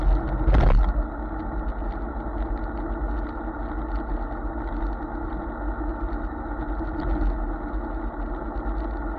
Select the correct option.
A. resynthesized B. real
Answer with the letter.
B